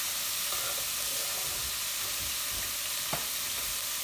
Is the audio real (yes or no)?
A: yes